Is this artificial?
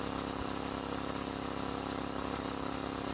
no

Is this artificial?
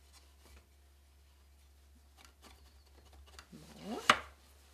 no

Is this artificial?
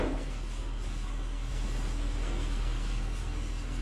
yes